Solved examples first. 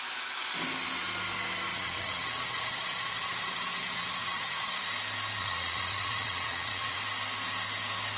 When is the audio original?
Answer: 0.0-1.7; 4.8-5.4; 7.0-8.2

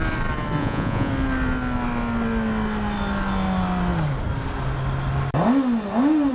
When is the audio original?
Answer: 0.0-0.6; 1.1-6.3